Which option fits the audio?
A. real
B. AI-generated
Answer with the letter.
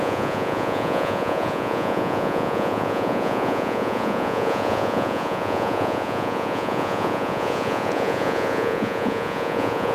B